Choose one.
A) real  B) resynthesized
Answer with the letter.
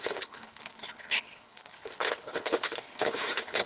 B